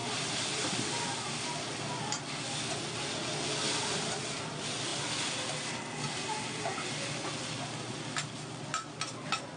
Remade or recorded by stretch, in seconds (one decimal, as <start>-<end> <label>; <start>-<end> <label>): 0.0-0.9 remade; 0.9-4.9 recorded; 4.9-5.7 remade; 5.7-9.6 recorded